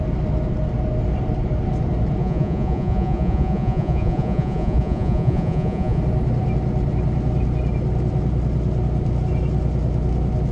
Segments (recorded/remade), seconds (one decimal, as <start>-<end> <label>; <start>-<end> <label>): 0.0-2.2 recorded; 2.2-6.0 remade; 6.0-10.5 recorded